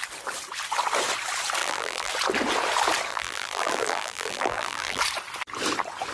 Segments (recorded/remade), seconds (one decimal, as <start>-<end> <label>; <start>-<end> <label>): 0.0-1.6 recorded; 1.6-2.1 remade; 2.1-3.1 recorded; 3.1-5.0 remade; 5.0-6.1 recorded